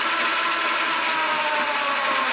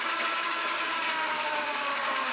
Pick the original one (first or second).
first